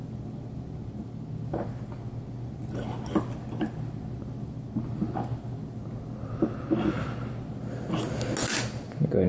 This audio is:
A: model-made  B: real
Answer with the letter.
B